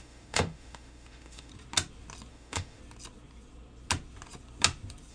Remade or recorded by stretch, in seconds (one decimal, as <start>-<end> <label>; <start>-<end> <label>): 0.0-1.5 remade; 1.5-2.3 recorded; 2.3-2.8 remade; 2.8-5.1 recorded

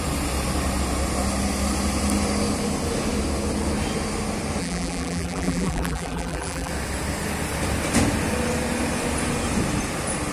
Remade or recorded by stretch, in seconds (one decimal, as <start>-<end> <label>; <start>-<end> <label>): 0.0-4.6 recorded; 4.6-6.7 remade; 6.7-10.3 recorded

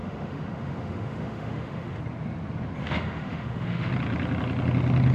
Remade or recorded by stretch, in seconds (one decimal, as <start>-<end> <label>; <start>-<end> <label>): 0.0-2.0 remade; 2.0-2.8 recorded; 2.8-3.9 remade; 3.9-5.1 recorded

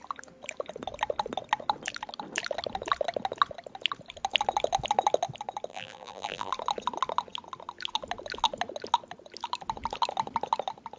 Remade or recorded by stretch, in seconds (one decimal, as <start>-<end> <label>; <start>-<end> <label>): 0.0-5.7 recorded; 5.7-6.5 remade; 6.5-11.0 recorded

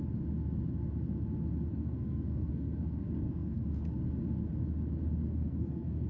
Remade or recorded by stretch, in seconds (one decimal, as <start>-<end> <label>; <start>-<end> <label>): 0.0-1.7 recorded; 1.7-4.0 remade; 4.0-5.2 recorded; 5.2-6.1 remade